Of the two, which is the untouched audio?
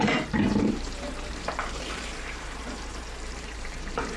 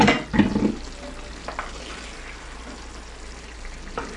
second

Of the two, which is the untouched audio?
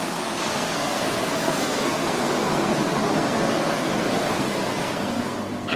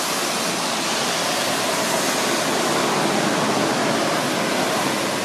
second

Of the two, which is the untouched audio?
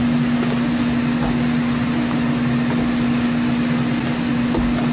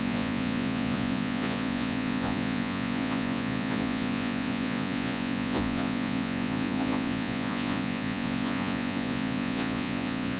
first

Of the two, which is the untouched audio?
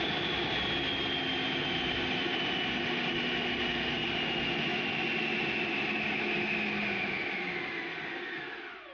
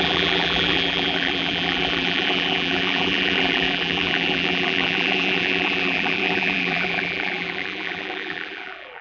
first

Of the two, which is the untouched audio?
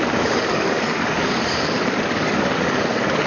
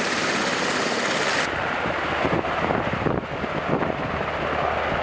second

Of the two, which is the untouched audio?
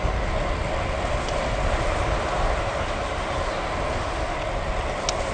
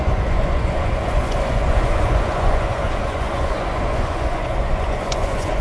first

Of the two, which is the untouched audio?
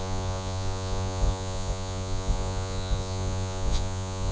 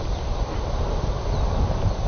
second